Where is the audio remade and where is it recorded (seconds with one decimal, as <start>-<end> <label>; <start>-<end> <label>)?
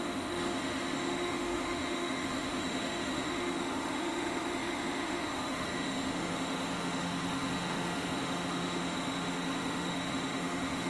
0.0-10.9 remade